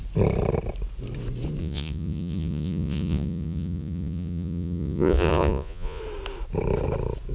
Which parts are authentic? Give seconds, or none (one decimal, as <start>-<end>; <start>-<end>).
0.0-1.6; 6.0-7.3